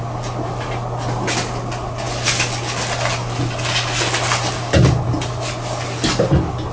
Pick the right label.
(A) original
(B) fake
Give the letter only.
A